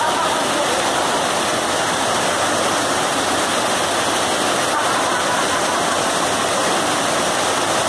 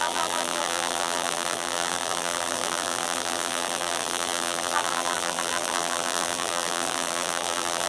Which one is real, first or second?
first